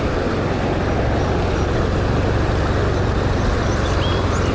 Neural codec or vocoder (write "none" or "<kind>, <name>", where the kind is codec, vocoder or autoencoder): none